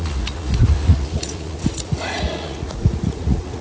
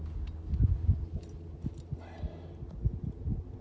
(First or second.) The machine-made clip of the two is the first